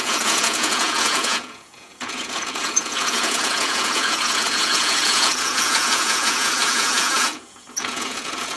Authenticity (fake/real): fake